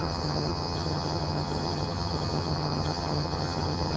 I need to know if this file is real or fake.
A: fake